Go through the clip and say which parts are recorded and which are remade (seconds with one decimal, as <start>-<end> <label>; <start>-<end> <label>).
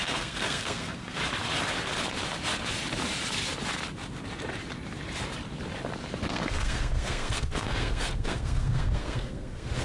0.0-1.2 remade; 1.2-6.3 recorded; 6.3-9.8 remade